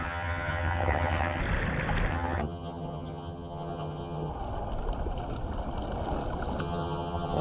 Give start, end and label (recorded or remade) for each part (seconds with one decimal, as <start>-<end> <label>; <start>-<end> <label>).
0.0-1.4 remade; 1.4-2.1 recorded; 2.1-4.3 remade; 4.3-6.6 recorded; 6.6-7.4 remade